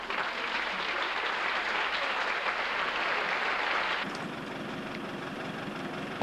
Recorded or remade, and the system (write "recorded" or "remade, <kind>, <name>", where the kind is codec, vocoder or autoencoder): recorded